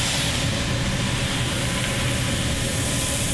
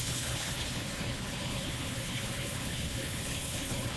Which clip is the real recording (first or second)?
first